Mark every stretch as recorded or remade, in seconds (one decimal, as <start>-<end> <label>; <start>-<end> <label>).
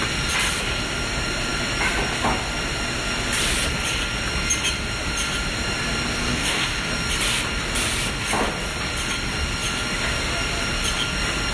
0.0-6.2 recorded; 6.2-6.9 remade; 6.9-11.5 recorded